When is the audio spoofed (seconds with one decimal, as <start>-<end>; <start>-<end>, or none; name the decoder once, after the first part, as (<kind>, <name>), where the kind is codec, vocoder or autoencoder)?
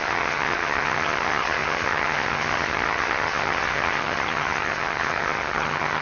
0.0-6.0 (vocoder, HiFi-GAN)